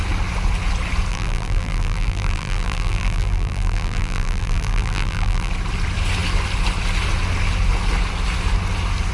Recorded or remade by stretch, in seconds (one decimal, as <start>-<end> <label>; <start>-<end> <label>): 0.0-1.1 recorded; 1.1-5.5 remade; 5.5-9.1 recorded